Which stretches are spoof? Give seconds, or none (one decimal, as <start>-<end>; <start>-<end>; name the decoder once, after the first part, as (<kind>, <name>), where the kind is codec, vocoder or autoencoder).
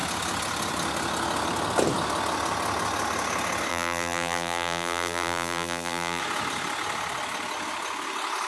3.7-6.2 (vocoder, BigVGAN v2)